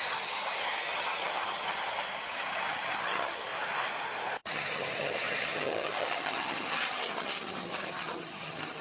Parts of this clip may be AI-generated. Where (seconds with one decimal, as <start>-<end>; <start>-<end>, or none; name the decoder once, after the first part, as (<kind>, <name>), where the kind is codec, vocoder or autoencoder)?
0.0-3.5 (vocoder, HiFi-GAN); 4.4-8.8